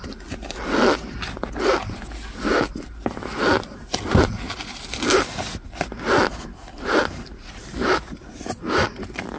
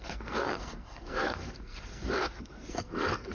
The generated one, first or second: second